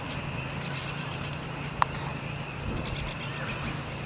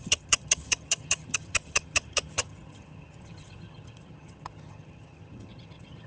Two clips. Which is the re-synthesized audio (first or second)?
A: second